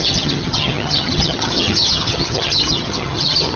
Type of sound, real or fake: fake